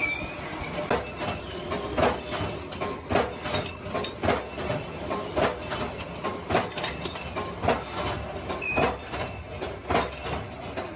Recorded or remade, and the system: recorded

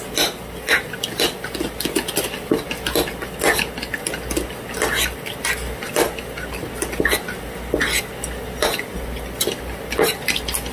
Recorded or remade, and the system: recorded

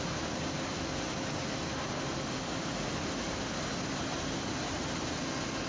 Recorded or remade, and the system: recorded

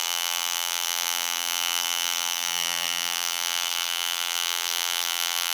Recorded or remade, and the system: remade, vocoder, BigVGAN v2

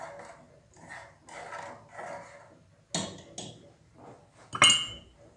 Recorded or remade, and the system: recorded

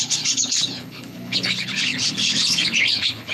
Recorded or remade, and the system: remade, codec, HILCodec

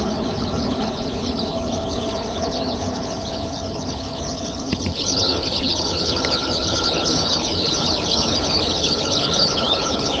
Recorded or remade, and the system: remade, codec, HILCodec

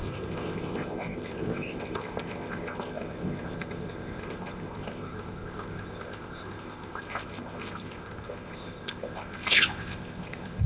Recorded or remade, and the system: remade, codec, ZipCodec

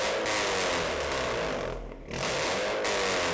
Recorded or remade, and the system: recorded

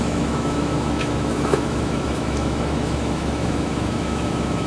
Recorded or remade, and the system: remade, autoencoder, DAC-VAE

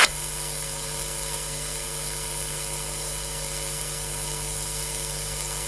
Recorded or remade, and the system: remade, codec, SNAC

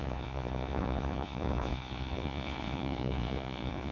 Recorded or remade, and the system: remade, vocoder, Vocos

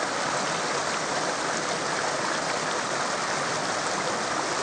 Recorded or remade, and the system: recorded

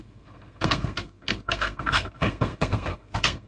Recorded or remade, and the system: remade, codec, SNAC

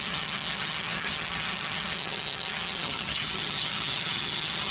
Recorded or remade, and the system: remade, vocoder, HiFi-GAN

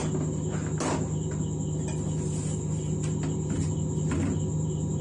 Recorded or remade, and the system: recorded